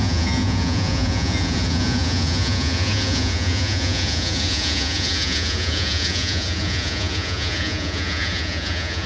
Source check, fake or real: fake